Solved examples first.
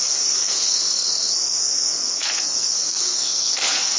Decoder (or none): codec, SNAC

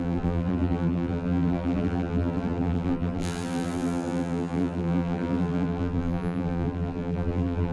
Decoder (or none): vocoder, BigVGAN v2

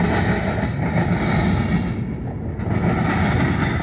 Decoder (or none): none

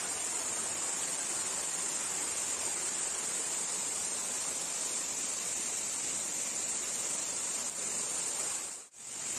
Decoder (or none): none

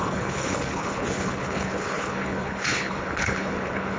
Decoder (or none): codec, HILCodec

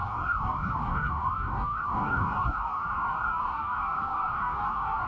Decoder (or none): codec, DAC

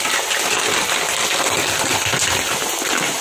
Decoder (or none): none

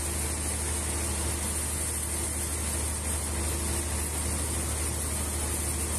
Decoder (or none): none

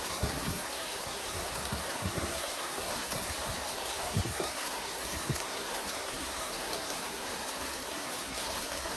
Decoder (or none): codec, SNAC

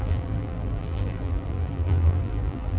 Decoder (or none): vocoder, BigVGAN v2